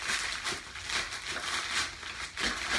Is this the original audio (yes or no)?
yes